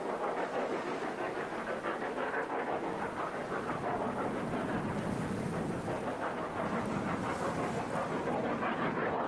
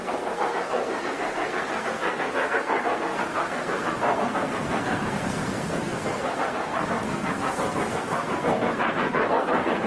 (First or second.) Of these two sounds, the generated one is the second